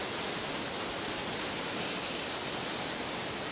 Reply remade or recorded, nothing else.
recorded